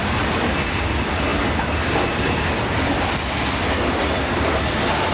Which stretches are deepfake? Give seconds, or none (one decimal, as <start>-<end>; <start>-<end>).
none